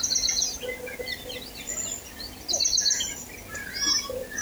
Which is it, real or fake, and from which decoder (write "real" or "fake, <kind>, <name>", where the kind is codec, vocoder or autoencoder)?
real